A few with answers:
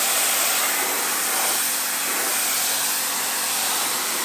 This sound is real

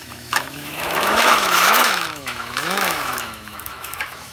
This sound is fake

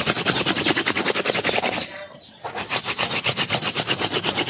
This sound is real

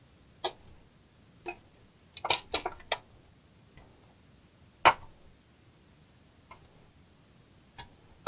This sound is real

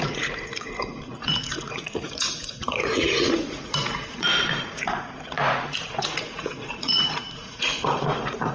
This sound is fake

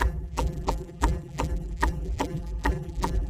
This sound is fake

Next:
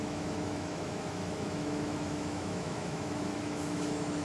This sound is fake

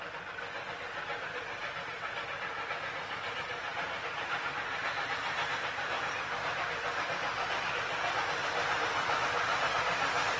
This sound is real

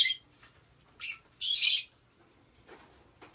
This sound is real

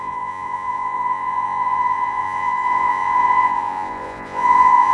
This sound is fake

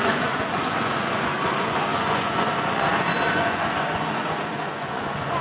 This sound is fake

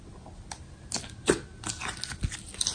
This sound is real